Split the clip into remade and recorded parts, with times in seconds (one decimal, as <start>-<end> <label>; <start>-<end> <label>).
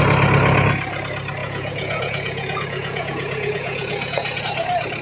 0.0-1.4 recorded; 1.4-4.4 remade; 4.4-5.0 recorded